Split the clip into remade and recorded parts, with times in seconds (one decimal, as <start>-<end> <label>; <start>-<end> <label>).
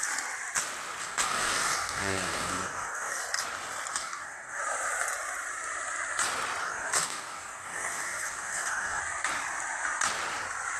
0.0-1.0 recorded; 1.0-3.2 remade; 3.2-3.9 recorded; 3.9-4.6 remade; 4.6-6.6 recorded; 6.6-9.0 remade; 9.0-10.8 recorded